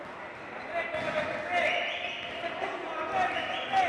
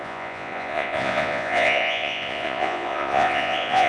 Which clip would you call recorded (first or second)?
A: first